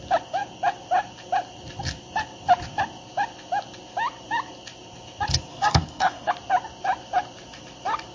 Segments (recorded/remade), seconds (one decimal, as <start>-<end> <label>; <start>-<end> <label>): 0.0-5.5 recorded; 5.5-6.3 remade; 6.3-8.1 recorded